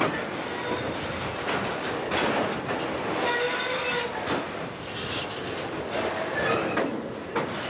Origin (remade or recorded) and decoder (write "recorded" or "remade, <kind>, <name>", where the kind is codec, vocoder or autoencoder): recorded